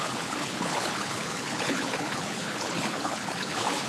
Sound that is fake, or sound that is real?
fake